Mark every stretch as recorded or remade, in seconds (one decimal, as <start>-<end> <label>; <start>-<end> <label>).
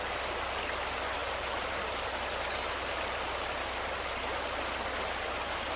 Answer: 0.0-5.8 recorded